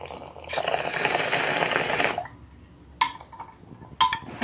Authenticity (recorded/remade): recorded